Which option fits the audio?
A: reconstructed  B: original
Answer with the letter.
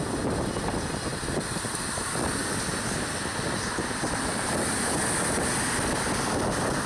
B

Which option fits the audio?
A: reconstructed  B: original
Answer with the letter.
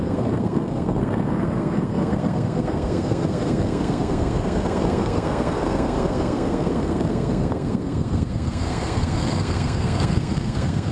A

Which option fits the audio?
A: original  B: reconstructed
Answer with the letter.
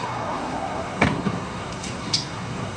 B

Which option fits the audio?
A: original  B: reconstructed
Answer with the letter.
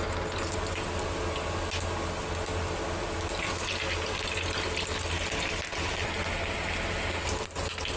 A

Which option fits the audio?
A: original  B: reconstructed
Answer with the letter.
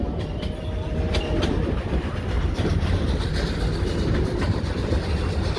A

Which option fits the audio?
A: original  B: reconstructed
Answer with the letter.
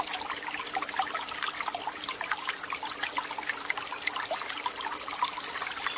A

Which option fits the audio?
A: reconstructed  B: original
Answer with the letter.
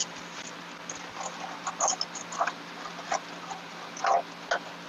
B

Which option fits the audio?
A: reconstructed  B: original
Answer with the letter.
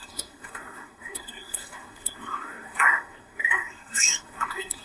A